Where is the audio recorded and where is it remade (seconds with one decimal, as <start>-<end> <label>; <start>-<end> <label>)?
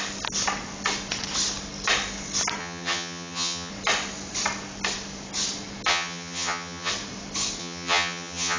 0.0-2.6 recorded; 2.6-3.7 remade; 3.7-5.9 recorded; 5.9-6.9 remade; 6.9-7.6 recorded; 7.6-8.6 remade